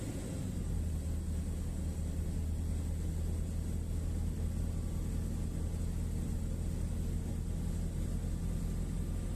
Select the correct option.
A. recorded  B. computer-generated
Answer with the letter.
A